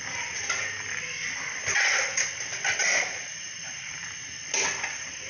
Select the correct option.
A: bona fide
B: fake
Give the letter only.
A